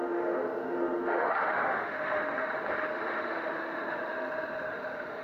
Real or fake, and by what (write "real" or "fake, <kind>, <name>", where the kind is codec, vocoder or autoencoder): fake, autoencoder, DAC-VAE